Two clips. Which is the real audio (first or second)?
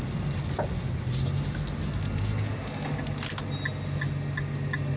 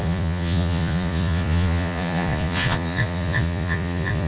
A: first